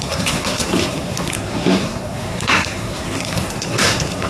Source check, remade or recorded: remade